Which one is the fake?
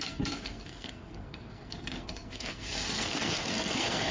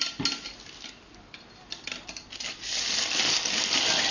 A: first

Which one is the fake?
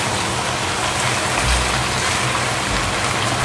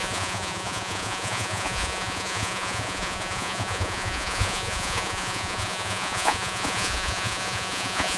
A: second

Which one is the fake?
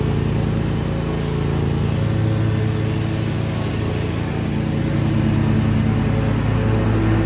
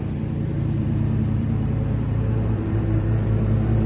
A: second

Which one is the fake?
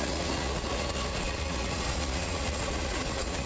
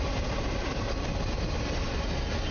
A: first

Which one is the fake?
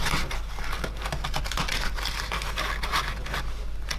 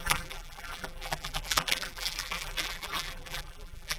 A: second